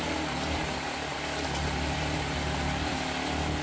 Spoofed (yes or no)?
no